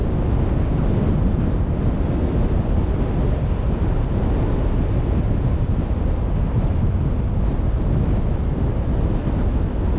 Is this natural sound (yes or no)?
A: yes